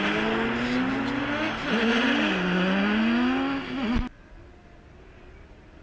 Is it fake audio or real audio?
real